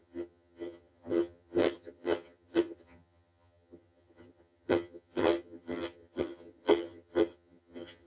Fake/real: fake